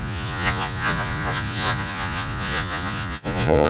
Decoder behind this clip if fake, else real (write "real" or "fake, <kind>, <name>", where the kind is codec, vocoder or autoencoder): fake, vocoder, Vocos